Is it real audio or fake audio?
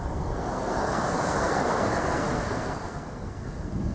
fake